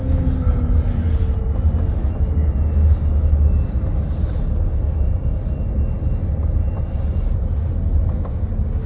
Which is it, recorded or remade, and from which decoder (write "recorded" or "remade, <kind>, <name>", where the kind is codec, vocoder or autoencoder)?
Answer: recorded